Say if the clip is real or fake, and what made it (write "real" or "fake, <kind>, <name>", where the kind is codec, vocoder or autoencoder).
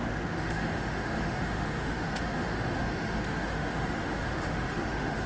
fake, autoencoder, DAC-VAE